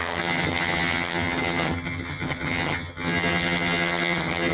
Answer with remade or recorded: remade